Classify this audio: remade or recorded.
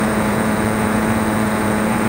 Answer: remade